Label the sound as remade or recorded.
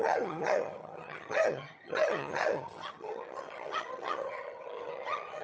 remade